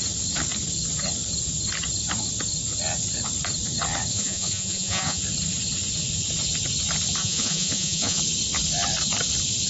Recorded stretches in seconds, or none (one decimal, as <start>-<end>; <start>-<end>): 0.0-4.1; 5.2-7.2; 8.2-9.7

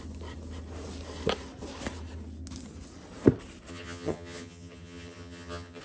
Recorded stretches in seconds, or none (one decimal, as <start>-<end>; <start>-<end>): 0.0-3.7